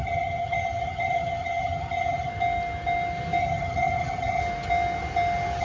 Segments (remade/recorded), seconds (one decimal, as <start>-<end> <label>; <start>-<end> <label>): 0.0-2.3 remade; 2.3-3.4 recorded; 3.4-4.4 remade; 4.4-5.6 recorded